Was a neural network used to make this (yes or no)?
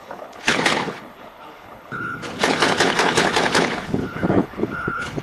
yes